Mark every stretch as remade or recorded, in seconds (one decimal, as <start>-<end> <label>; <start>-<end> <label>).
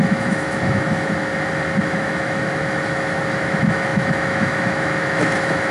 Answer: 0.0-1.3 remade; 1.3-1.8 recorded; 1.8-5.7 remade